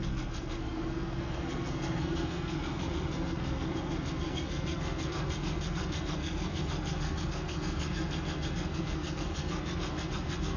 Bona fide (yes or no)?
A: no